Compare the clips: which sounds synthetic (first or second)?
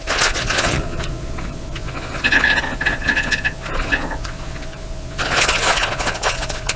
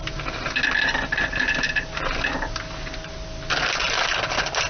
first